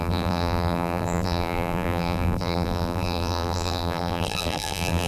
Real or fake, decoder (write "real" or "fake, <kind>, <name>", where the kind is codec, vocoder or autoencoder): fake, vocoder, BigVGAN v2